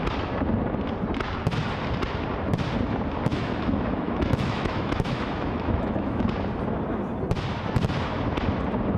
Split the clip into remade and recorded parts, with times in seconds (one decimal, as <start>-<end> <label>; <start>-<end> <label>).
0.0-3.3 recorded; 3.3-6.3 remade; 6.3-9.0 recorded